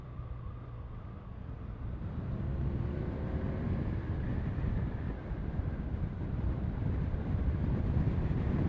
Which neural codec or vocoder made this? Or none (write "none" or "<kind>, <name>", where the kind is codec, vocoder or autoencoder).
vocoder, BigVGAN v2